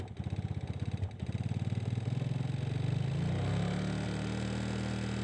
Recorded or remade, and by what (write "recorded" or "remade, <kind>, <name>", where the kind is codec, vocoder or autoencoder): recorded